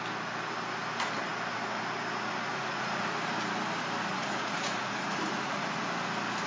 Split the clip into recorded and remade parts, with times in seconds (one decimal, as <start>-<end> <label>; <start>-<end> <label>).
0.0-2.5 recorded; 2.5-3.0 remade; 3.0-4.1 recorded; 4.1-5.8 remade; 5.8-6.5 recorded